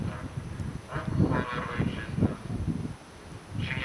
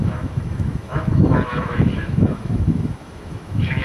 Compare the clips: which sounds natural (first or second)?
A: first